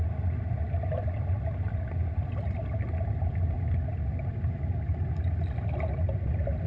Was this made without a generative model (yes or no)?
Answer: yes